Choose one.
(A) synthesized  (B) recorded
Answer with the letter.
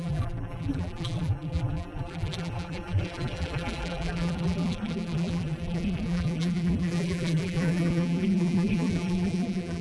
A